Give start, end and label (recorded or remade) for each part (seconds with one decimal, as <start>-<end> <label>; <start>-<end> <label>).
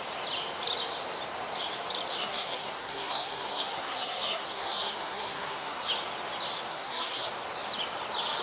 0.0-2.1 recorded; 2.1-5.9 remade; 5.9-6.7 recorded; 6.7-7.3 remade; 7.3-8.4 recorded